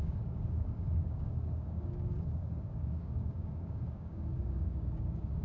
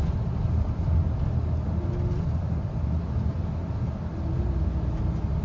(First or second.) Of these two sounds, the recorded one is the second